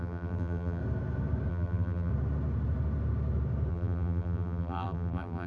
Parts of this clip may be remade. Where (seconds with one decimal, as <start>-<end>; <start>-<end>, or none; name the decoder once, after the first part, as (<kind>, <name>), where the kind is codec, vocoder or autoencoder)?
0.0-0.8 (vocoder, BigVGAN v2); 1.5-2.1; 3.7-5.5